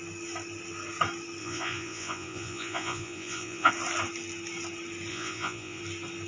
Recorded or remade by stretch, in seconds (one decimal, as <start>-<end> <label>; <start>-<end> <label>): 0.0-1.4 recorded; 1.4-3.7 remade; 3.7-5.1 recorded; 5.1-5.8 remade; 5.8-6.3 recorded